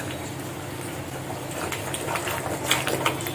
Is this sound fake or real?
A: real